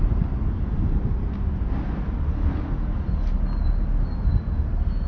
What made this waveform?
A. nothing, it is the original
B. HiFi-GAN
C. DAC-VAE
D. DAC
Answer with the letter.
A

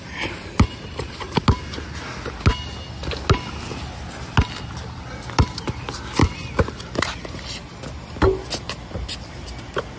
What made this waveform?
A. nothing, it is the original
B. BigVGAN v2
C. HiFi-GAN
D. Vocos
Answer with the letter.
A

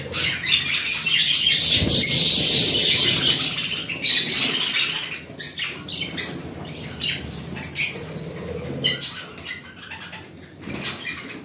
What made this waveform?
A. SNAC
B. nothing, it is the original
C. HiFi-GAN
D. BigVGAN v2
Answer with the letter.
B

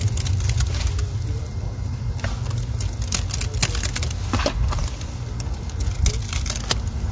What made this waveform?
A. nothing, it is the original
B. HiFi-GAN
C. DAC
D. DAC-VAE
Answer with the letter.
A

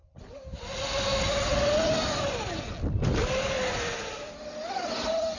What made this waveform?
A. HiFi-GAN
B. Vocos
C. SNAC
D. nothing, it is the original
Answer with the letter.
D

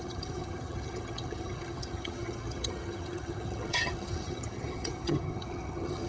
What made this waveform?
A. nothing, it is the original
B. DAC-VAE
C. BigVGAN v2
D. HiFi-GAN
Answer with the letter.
D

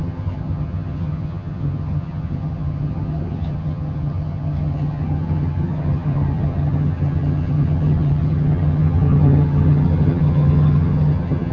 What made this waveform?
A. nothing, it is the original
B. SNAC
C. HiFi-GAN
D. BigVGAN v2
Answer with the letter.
C